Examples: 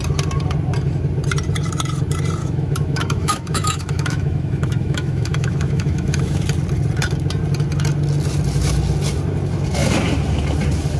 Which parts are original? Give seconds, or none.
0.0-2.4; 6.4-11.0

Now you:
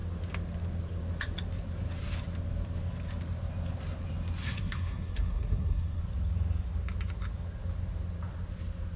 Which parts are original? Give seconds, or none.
0.0-4.4; 6.0-9.0